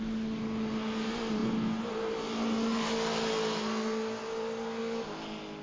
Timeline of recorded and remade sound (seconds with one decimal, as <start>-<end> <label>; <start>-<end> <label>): 0.0-5.6 recorded